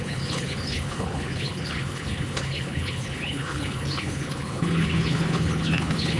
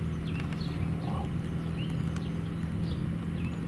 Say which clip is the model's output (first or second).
first